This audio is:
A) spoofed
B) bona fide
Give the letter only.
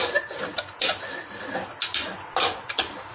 B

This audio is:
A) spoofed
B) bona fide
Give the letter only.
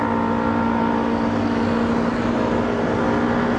B